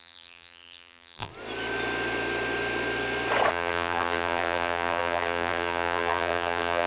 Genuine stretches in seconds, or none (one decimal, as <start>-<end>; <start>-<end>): 1.3-3.5